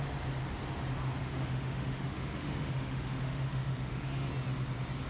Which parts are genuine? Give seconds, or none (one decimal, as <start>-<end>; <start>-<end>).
0.0-1.2; 4.3-5.1